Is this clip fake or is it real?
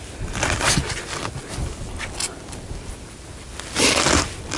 real